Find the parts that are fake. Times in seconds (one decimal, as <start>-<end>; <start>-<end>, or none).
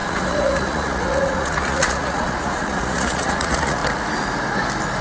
0.0-3.8